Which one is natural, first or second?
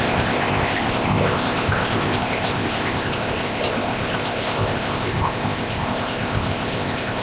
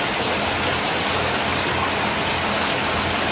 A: second